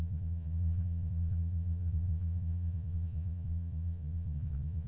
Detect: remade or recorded remade